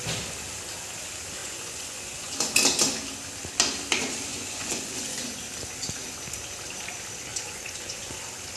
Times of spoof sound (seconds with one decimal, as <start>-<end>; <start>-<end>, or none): 1.4-2.5; 4.3-5.3; 7.3-8.2